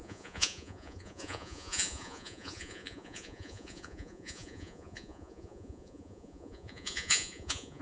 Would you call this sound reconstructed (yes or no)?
yes